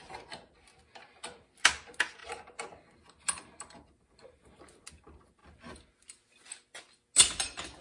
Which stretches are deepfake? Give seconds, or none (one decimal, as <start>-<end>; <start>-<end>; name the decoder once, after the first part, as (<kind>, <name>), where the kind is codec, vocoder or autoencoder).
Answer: none